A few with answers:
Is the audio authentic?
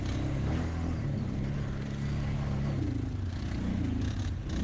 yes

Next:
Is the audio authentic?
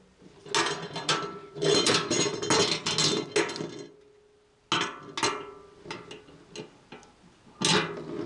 yes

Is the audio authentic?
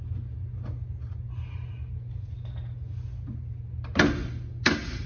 yes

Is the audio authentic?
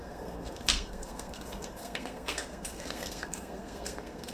no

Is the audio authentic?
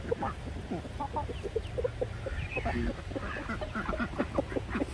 yes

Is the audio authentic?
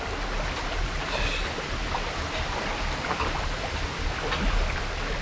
yes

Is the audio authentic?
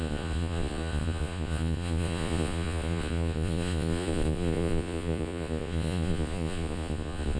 no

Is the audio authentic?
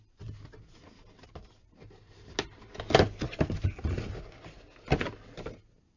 yes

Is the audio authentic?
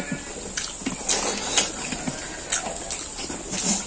yes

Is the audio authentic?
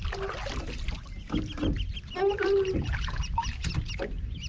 yes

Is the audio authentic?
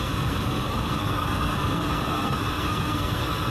no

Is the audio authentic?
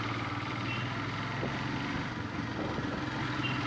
yes